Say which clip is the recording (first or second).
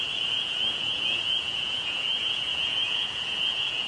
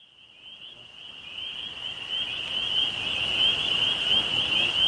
second